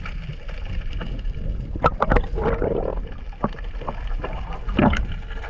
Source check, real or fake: real